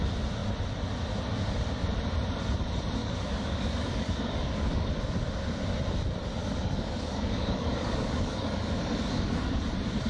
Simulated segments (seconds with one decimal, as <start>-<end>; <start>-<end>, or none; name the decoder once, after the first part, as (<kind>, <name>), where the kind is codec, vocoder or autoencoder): 3.0-4.9 (codec, DAC); 6.4-9.6

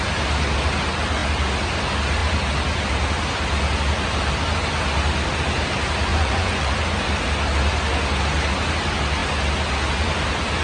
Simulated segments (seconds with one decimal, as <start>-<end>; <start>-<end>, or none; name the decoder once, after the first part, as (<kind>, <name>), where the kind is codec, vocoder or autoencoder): 6.1-6.7 (vocoder, Vocos)

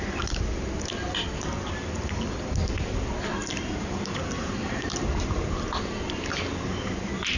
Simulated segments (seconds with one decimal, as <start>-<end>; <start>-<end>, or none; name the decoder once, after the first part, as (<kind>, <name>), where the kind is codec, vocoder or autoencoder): 3.4-5.8 (vocoder, BigVGAN v2)

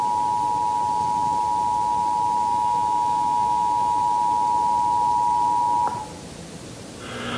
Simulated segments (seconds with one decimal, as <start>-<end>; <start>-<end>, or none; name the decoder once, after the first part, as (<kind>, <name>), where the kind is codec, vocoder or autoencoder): 2.5-4.0 (autoencoder, DAC-VAE)